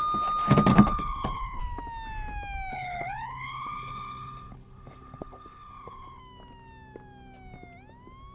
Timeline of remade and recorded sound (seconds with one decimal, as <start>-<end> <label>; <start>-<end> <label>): 0.0-0.7 recorded; 0.7-1.6 remade; 1.6-2.7 recorded; 2.7-6.2 remade; 6.2-8.3 recorded